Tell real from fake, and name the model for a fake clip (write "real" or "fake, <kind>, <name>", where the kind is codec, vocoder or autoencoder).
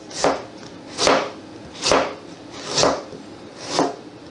real